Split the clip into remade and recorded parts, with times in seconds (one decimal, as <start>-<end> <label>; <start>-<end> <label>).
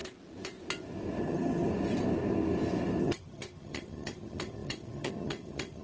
0.0-1.2 recorded; 1.2-1.7 remade; 1.7-3.0 recorded; 3.0-5.8 remade